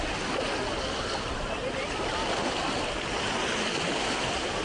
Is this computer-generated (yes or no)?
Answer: no